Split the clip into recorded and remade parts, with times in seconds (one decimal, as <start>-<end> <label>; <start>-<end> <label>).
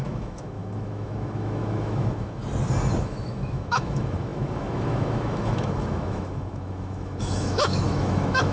0.0-2.4 remade; 2.4-3.0 recorded; 3.0-8.5 remade